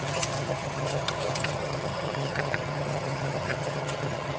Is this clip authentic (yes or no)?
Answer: no